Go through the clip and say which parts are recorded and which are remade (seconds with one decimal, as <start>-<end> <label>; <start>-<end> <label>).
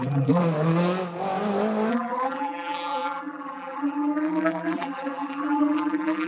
0.0-0.4 remade; 0.4-1.9 recorded; 1.9-6.3 remade